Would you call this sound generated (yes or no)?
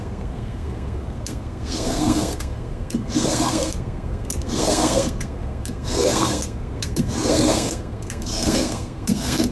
yes